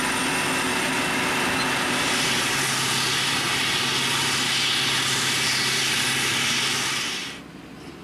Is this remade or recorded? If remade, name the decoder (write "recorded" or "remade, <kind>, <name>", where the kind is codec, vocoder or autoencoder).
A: recorded